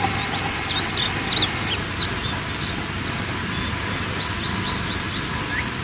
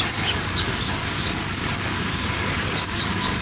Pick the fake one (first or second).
second